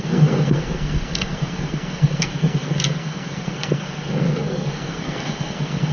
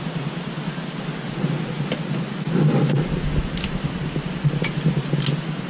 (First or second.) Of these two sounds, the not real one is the first